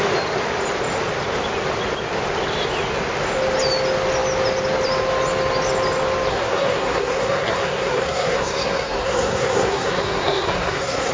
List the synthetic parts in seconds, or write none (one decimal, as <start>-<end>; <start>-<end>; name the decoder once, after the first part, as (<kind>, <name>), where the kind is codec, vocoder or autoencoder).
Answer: 6.3-11.1 (codec, SNAC)